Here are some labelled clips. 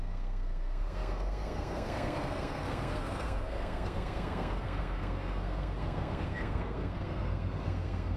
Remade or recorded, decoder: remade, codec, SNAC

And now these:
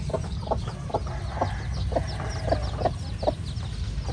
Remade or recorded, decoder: recorded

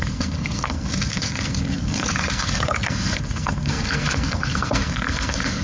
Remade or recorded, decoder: remade, codec, SNAC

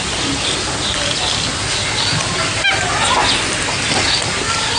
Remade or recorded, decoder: recorded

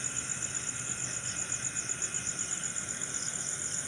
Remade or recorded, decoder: recorded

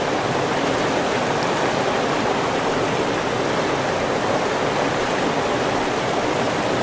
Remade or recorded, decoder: recorded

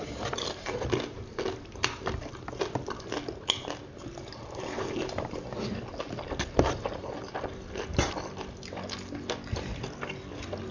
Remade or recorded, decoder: recorded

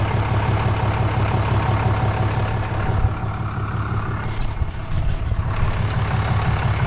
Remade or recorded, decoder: recorded